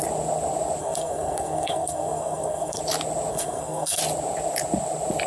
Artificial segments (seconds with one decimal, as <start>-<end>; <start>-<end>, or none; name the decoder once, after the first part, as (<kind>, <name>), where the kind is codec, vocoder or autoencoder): 0.8-2.8 (codec, SNAC); 3.3-4.0